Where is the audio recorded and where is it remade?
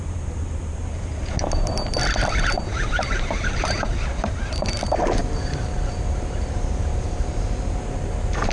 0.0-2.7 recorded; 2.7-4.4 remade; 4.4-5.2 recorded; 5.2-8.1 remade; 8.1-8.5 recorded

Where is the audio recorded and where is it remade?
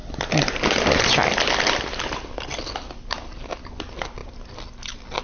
0.0-2.6 remade; 2.6-5.2 recorded